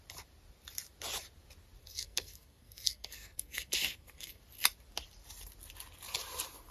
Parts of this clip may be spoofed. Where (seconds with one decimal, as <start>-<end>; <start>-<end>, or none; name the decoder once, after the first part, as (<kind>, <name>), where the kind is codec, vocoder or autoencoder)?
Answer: 1.8-4.4 (codec, SNAC)